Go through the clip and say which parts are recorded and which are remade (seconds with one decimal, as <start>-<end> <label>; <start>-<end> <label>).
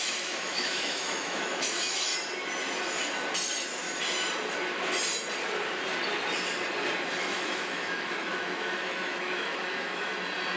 0.0-2.1 remade; 2.1-7.2 recorded; 7.2-10.1 remade; 10.1-10.6 recorded